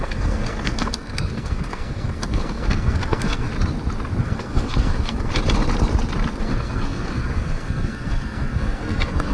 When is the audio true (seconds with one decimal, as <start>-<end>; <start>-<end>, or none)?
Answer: 3.5-4.2; 5.3-6.4